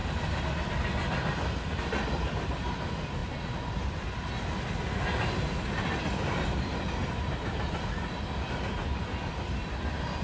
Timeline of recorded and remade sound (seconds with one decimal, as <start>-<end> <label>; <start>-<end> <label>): 0.0-1.7 recorded; 1.7-3.2 remade; 3.2-6.3 recorded; 6.3-10.2 remade